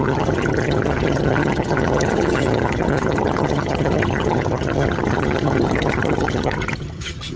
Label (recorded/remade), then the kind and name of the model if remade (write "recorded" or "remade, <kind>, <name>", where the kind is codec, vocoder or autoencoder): remade, vocoder, HiFi-GAN